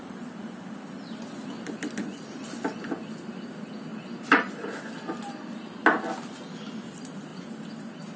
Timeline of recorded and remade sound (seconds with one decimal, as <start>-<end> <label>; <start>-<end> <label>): 0.0-3.9 recorded; 3.9-4.5 remade; 4.5-8.2 recorded